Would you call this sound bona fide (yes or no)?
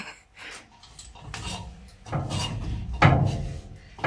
yes